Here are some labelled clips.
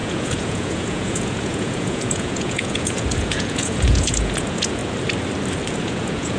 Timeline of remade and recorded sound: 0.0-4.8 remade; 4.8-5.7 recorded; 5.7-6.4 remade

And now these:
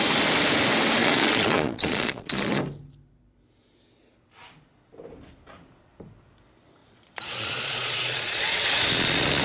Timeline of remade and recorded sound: 0.0-1.0 recorded; 1.0-2.6 remade; 2.6-6.8 recorded; 6.8-9.4 remade

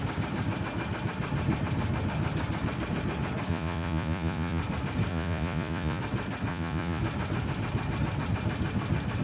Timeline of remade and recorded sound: 0.0-3.5 recorded; 3.5-4.6 remade; 4.6-5.1 recorded; 5.1-6.0 remade; 6.0-6.5 recorded; 6.5-7.0 remade; 7.0-9.2 recorded

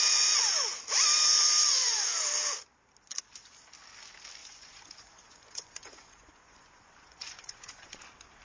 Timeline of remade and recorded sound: 0.0-4.4 recorded; 4.4-8.0 remade; 8.0-8.4 recorded

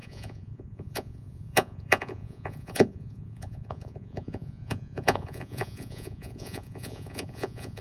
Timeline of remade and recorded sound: 0.0-7.8 remade

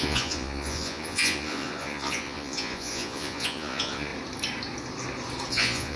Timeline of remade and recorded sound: 0.0-4.1 remade; 4.1-5.5 recorded; 5.5-6.0 remade